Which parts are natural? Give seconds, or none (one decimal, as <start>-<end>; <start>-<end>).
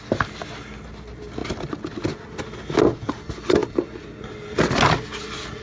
0.0-5.6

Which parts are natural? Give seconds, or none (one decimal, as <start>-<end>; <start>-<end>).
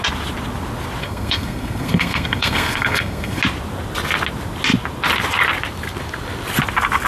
0.0-1.0; 3.4-7.1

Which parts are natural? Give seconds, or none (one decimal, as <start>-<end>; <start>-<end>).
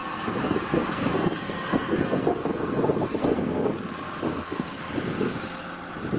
3.7-4.3; 4.8-6.2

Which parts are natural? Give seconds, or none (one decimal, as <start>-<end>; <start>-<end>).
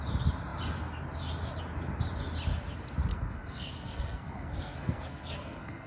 0.0-3.1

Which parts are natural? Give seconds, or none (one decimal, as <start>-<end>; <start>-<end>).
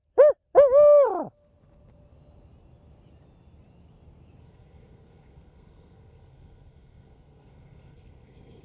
0.0-4.4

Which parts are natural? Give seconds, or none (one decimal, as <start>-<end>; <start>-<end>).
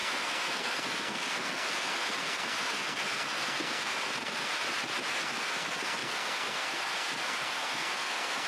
4.5-5.1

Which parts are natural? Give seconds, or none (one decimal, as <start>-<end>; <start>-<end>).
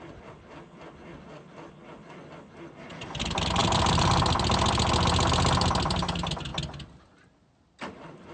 0.0-8.3